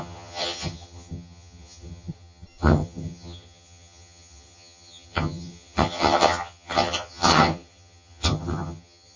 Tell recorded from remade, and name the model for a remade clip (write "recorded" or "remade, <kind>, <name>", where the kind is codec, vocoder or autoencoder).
remade, vocoder, HiFi-GAN